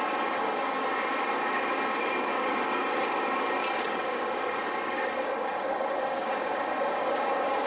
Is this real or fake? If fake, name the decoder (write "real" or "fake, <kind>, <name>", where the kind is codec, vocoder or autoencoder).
fake, codec, DAC